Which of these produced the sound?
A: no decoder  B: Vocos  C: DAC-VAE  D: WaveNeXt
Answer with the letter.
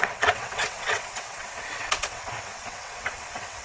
D